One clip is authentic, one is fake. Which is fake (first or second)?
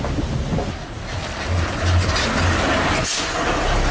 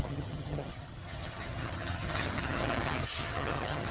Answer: second